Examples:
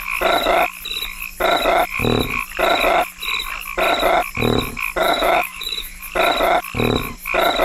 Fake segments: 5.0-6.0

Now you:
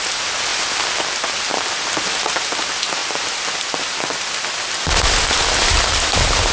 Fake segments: none

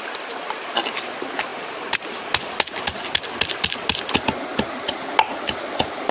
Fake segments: none